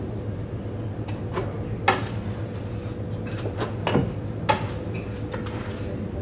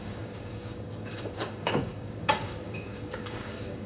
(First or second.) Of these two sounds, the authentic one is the first